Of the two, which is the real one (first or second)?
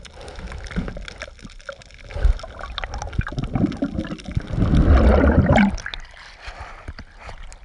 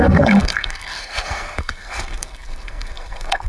first